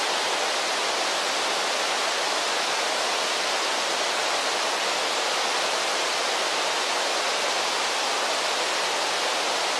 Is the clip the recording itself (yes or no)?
yes